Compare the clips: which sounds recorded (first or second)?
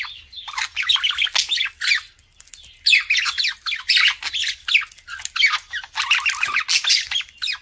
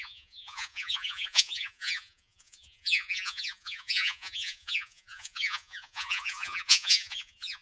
first